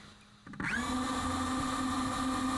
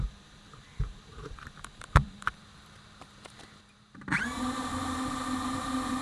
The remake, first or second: second